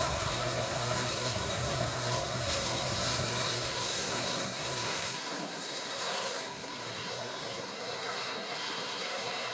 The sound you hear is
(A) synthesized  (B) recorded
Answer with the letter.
A